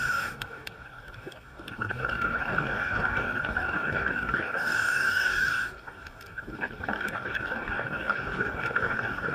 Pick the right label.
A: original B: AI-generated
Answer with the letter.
B